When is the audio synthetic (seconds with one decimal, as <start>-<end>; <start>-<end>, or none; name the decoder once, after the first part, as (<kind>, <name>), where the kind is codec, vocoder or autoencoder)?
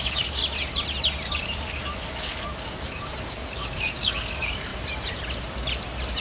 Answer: 0.0-0.4 (codec, DAC); 1.3-4.7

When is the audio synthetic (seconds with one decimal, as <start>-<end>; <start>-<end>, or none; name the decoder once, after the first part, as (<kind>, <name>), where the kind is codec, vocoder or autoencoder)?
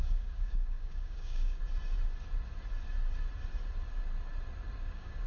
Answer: 0.0-1.6 (codec, DAC); 4.8-5.3